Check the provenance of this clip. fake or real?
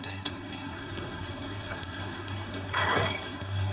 fake